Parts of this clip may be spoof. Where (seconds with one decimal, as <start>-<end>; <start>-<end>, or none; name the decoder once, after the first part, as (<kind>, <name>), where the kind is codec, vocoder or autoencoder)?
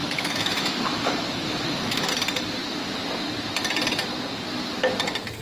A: 0.0-2.1 (autoencoder, DAC-VAE)